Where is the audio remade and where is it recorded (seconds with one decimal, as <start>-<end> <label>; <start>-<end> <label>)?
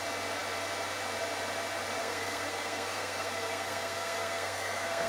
0.0-2.0 recorded; 2.0-5.1 remade